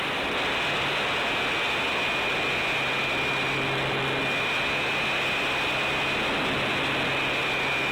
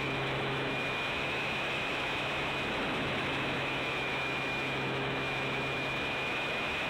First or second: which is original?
first